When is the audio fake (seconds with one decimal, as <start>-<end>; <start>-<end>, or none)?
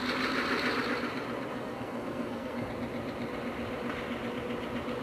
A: 1.5-2.7